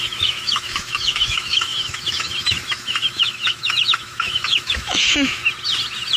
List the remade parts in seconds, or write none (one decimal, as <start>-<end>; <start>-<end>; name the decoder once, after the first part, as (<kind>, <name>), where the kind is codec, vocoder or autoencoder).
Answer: 0.0-5.4 (autoencoder, DAC-VAE)